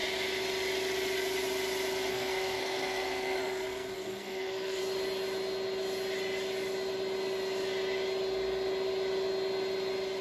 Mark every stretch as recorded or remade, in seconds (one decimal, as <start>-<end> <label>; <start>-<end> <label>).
0.0-2.1 recorded; 2.1-4.8 remade; 4.8-10.2 recorded